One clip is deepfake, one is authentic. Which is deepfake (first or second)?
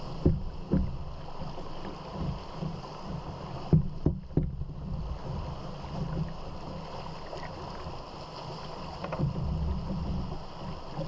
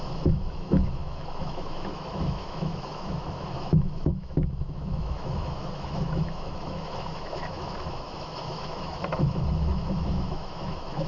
second